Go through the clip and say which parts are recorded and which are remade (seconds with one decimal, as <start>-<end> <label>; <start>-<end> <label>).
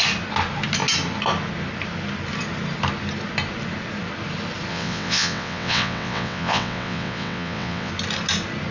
0.0-4.7 recorded; 4.7-7.9 remade; 7.9-8.7 recorded